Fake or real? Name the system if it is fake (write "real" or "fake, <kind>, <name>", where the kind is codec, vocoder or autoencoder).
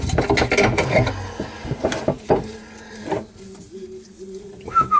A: real